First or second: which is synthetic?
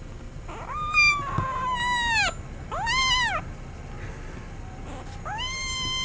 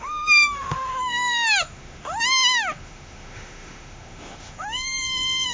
second